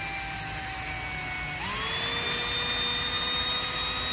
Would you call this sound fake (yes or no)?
no